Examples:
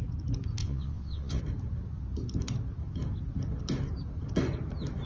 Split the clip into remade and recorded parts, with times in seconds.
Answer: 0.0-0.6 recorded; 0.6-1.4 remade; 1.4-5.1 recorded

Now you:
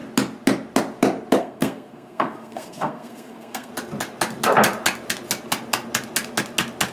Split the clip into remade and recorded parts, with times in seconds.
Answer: 0.0-1.4 recorded; 1.4-3.7 remade; 3.7-6.9 recorded